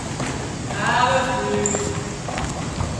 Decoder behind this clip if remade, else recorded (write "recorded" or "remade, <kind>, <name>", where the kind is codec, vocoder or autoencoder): recorded